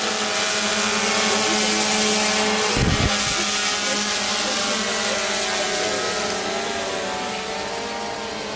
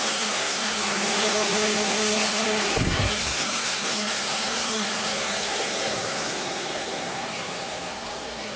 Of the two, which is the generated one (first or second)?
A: second